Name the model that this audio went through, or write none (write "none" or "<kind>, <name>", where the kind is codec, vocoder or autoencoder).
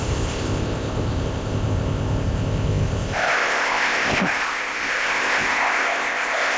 codec, ZipCodec